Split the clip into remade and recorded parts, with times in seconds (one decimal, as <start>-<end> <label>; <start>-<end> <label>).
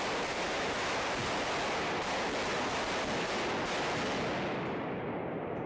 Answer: 0.0-5.7 recorded